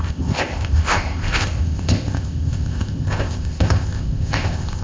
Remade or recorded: remade